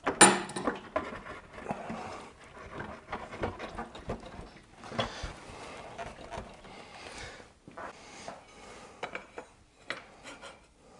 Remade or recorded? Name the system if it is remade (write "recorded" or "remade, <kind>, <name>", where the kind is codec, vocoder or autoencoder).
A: recorded